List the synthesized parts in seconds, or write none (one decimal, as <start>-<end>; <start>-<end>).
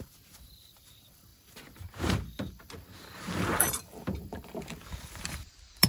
0.0-5.9